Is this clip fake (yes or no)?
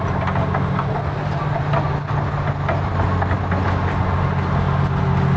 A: no